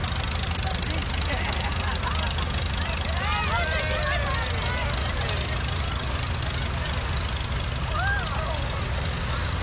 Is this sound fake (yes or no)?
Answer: no